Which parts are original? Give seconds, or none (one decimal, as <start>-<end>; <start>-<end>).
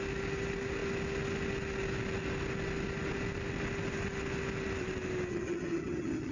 0.0-5.3